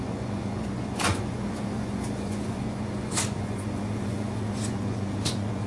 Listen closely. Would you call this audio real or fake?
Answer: fake